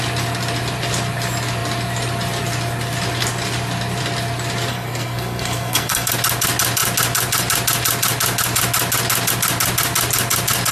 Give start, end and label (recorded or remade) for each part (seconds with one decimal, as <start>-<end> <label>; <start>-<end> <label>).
0.0-4.7 recorded; 4.7-6.1 remade; 6.1-10.7 recorded